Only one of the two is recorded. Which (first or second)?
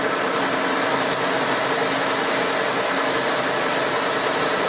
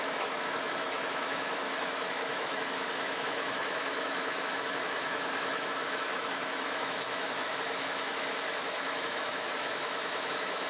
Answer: first